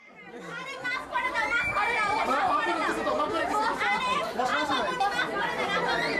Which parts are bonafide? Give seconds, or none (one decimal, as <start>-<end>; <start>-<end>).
2.8-4.0; 4.5-6.2